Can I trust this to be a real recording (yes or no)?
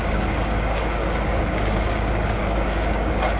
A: no